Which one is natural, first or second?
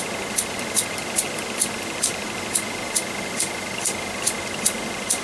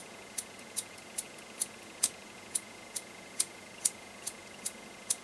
first